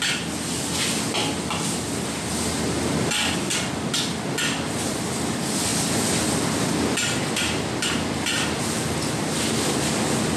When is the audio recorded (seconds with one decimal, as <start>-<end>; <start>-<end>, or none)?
0.0-10.4